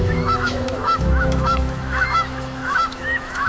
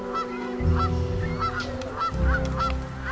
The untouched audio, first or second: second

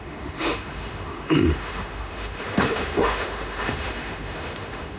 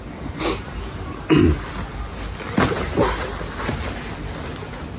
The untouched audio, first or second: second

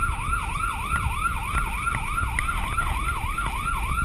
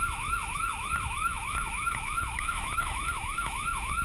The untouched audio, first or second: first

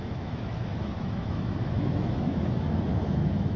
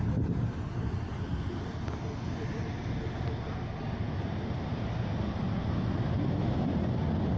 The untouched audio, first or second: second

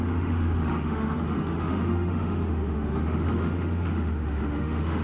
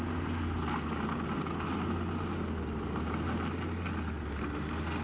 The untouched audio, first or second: second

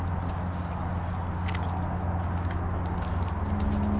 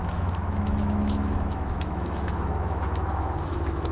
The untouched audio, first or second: first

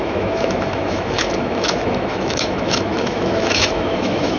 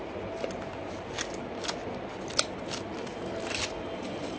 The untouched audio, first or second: second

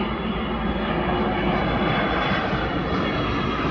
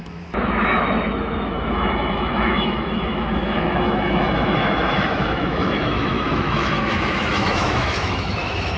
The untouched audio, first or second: first